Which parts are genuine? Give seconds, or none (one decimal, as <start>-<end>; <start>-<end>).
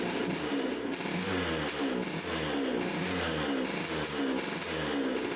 0.0-5.4